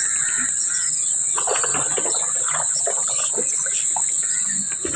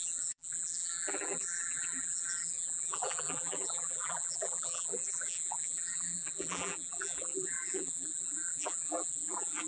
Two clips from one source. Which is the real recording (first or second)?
first